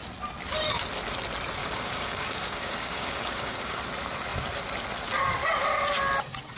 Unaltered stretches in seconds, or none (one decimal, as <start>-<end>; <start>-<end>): 0.0-1.6; 3.8-6.6

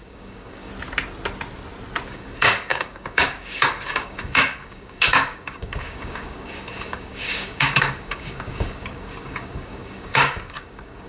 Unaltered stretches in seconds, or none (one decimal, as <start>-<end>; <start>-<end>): 0.7-2.1

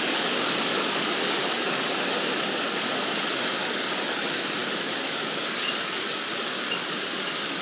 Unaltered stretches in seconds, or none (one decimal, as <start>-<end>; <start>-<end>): none

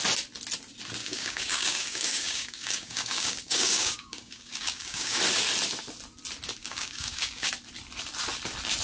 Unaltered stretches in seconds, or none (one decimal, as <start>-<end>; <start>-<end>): 0.0-1.0; 5.2-6.6; 7.5-8.8

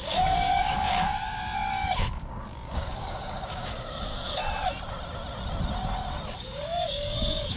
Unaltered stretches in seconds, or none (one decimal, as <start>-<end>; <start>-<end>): 4.4-6.4

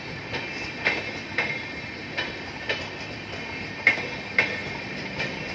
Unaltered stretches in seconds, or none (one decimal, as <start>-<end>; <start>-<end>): 0.0-5.5